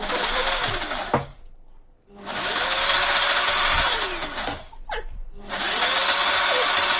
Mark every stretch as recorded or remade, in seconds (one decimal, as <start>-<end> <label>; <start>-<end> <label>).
0.0-7.0 recorded